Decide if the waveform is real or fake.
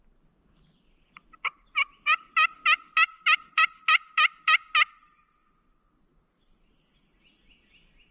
real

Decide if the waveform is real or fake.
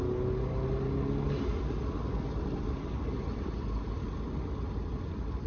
real